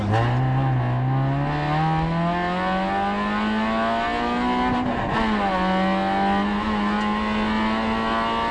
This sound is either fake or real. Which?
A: real